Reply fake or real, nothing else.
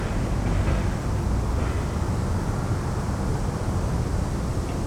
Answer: real